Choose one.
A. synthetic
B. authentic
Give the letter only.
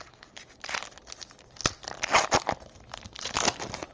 B